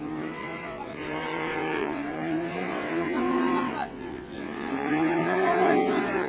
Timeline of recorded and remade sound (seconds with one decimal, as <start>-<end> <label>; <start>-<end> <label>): 0.0-6.3 remade